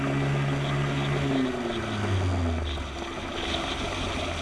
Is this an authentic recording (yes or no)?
yes